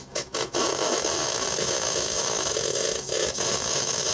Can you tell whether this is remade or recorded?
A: remade